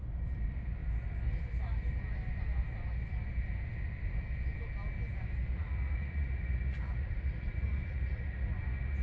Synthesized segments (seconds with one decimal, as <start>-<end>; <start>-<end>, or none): 5.5-9.0